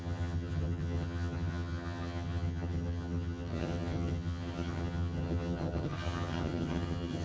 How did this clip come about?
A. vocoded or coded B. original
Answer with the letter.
A